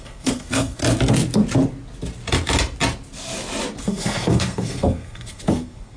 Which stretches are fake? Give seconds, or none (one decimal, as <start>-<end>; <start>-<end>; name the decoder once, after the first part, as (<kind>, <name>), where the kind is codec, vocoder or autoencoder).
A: 0.0-0.8 (codec, SNAC); 3.8-6.0